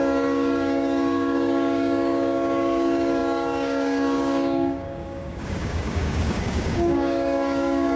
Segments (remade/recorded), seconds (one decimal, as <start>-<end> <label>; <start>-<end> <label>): 0.0-8.0 remade